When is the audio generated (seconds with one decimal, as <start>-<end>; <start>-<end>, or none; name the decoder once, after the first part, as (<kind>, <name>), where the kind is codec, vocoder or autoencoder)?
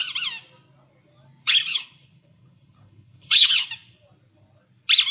1.4-3.7 (codec, HILCodec)